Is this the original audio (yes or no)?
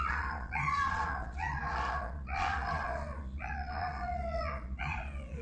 no